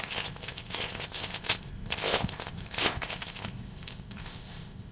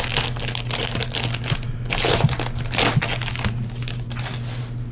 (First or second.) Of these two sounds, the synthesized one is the first